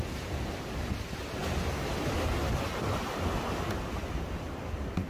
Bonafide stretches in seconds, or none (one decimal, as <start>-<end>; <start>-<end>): 0.0-5.1

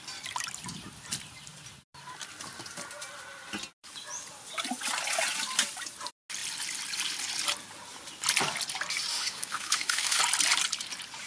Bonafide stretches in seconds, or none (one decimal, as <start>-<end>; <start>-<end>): 0.0-9.1; 10.2-11.3

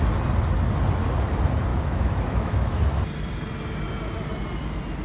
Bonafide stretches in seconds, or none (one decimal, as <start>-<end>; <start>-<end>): 0.0-1.7; 2.8-5.0